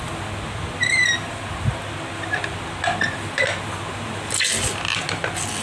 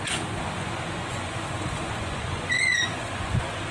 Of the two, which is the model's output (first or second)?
second